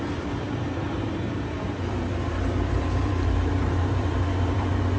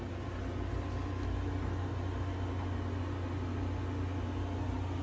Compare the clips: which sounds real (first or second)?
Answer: second